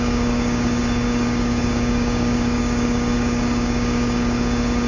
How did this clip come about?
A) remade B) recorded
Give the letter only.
A